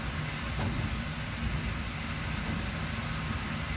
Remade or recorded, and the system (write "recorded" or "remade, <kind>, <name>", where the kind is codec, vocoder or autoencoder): recorded